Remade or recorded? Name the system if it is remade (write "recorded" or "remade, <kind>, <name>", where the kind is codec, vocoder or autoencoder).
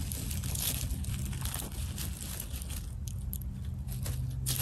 recorded